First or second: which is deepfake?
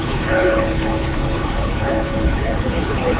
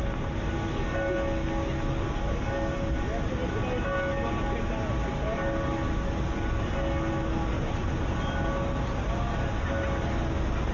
first